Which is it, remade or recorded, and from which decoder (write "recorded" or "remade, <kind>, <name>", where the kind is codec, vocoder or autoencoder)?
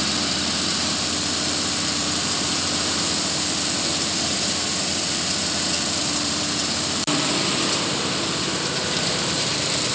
remade, vocoder, BigVGAN v2